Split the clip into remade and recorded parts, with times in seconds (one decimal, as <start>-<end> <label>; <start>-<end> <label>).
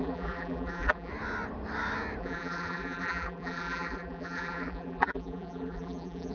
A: 0.0-1.1 remade; 1.1-2.2 recorded; 2.2-6.3 remade